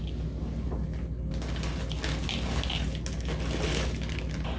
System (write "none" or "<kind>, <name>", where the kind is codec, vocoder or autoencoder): none